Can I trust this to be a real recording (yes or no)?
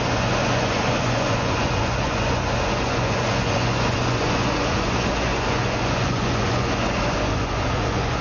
no